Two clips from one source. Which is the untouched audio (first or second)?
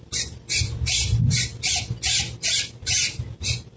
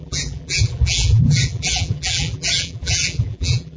first